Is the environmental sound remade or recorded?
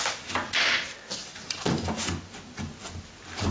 recorded